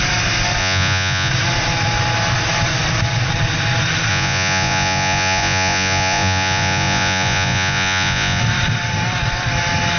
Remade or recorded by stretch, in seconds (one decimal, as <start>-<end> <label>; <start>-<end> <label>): 0.0-0.6 recorded; 0.6-1.3 remade; 1.3-4.1 recorded; 4.1-8.4 remade; 8.4-10.0 recorded